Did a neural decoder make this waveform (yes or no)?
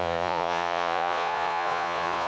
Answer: yes